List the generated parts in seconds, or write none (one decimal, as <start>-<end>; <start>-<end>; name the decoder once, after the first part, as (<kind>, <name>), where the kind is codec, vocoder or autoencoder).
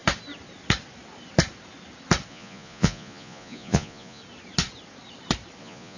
2.3-4.2 (vocoder, Vocos); 5.6-6.0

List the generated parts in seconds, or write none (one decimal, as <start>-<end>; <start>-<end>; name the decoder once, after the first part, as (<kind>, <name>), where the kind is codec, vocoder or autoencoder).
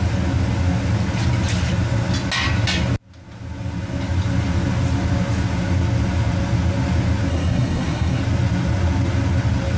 7.3-8.2 (codec, SNAC)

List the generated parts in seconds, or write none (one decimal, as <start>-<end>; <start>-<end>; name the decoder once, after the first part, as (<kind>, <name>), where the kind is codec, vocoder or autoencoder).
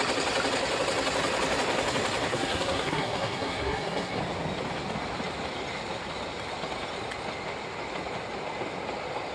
2.3-4.2 (codec, SNAC)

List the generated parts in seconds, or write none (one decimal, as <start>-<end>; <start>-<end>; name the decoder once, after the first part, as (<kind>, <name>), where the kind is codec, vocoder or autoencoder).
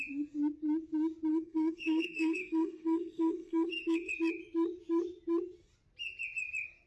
1.3-4.1 (codec, SNAC)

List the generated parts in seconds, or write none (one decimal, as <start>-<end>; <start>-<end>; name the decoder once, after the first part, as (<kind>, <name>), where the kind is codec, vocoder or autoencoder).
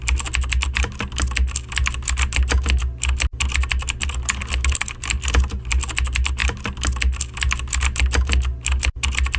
none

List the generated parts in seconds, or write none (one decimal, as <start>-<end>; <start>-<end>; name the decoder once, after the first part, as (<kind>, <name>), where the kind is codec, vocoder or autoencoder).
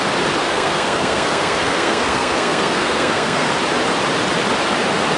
0.4-3.5 (codec, SNAC)